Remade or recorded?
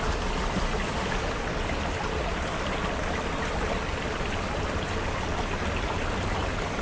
recorded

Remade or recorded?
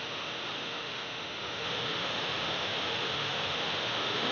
remade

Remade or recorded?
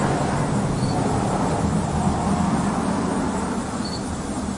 recorded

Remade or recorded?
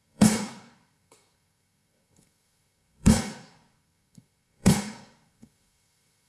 remade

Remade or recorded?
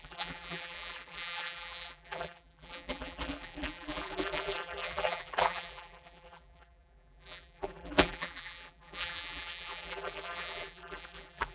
remade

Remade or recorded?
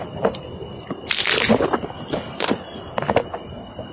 recorded